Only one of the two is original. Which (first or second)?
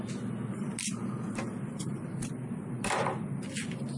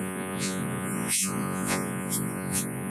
first